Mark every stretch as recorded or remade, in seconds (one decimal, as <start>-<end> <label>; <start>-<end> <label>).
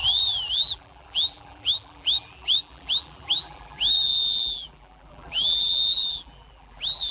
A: 0.0-7.1 remade